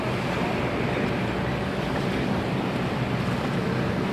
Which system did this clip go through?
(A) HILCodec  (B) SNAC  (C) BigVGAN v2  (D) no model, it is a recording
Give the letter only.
D